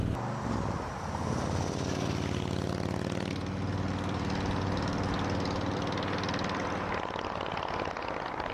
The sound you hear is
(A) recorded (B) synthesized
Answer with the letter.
A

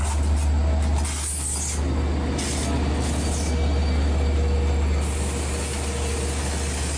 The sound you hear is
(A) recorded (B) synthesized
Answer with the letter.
A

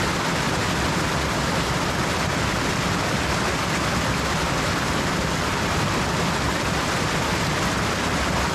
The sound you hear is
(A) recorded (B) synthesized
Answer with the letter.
A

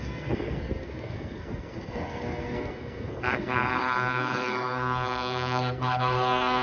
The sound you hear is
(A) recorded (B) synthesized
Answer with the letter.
B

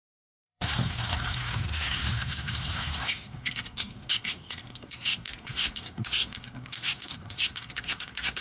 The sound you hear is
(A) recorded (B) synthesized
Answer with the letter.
B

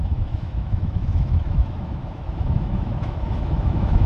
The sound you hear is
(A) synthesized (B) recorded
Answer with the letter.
A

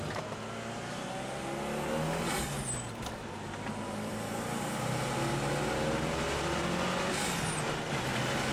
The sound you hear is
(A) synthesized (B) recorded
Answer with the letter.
B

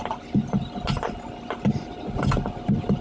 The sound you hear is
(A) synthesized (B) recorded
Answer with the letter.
B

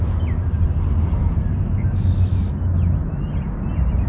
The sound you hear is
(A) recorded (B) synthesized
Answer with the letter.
A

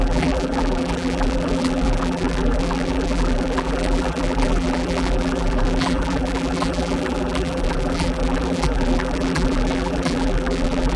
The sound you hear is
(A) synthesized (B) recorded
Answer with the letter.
A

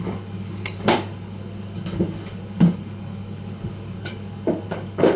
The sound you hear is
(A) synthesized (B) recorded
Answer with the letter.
A